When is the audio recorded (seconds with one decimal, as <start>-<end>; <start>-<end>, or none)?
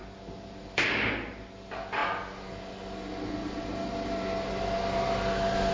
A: 0.0-5.7